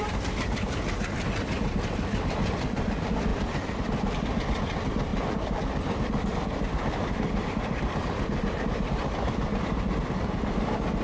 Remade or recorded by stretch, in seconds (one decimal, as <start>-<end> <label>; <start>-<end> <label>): 0.0-3.3 recorded; 3.3-4.2 remade; 4.2-5.1 recorded; 5.1-9.6 remade; 9.6-11.0 recorded